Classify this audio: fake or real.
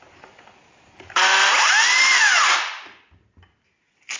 real